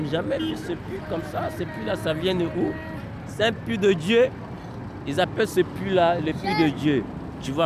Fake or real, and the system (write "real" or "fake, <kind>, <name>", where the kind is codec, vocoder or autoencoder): real